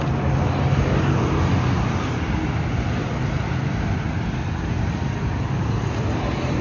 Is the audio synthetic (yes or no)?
no